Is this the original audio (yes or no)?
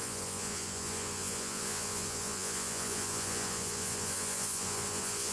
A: no